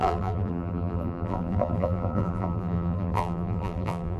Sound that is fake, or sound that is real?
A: fake